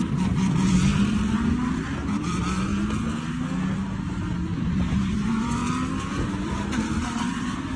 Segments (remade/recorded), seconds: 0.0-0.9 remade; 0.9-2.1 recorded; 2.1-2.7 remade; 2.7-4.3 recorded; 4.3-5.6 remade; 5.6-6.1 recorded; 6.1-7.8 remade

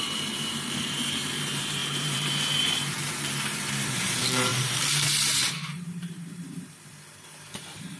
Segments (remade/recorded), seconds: 0.0-8.0 remade

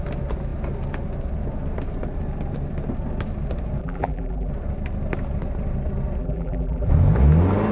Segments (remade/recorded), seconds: 0.0-3.8 recorded; 3.8-4.5 remade; 4.5-6.2 recorded; 6.2-6.9 remade; 6.9-7.7 recorded